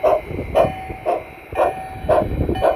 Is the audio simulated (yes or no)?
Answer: no